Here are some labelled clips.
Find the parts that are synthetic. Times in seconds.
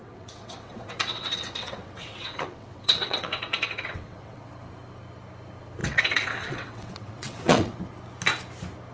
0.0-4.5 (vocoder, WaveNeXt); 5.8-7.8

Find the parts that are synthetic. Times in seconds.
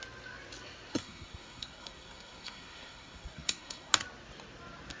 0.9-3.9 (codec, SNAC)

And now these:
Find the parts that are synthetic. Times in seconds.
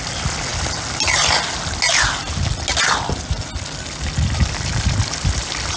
none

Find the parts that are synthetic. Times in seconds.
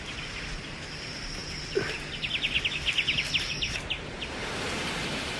none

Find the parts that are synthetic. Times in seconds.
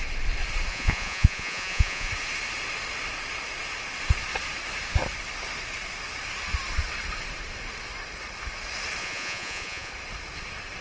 0.7-2.1 (vocoder, Vocos); 9.0-9.9